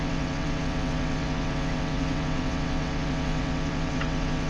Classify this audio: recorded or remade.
remade